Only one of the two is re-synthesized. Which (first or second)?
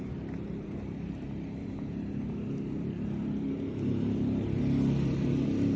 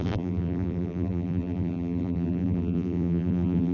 second